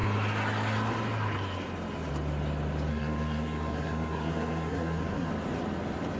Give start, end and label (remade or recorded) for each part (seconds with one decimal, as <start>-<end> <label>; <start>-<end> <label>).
0.0-2.9 recorded; 2.9-5.3 remade; 5.3-6.2 recorded